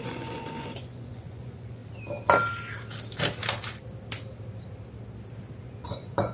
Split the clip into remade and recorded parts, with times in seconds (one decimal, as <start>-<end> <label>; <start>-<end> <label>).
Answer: 0.0-1.8 remade; 1.8-5.6 recorded; 5.6-6.3 remade